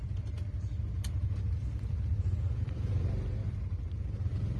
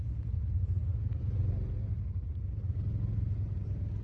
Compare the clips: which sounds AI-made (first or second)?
first